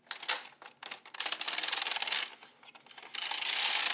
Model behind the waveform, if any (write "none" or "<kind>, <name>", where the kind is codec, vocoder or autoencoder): none